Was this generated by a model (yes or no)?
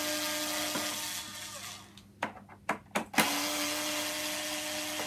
no